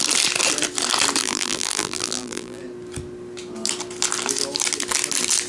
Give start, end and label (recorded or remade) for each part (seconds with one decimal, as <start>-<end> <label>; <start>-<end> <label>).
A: 0.0-1.2 recorded; 1.2-2.6 remade; 2.6-5.5 recorded

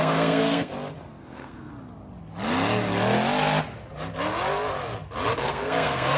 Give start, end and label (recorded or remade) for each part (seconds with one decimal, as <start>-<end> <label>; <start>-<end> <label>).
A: 0.0-0.7 remade; 0.7-1.2 recorded; 1.2-1.7 remade; 1.7-5.4 recorded; 5.4-6.2 remade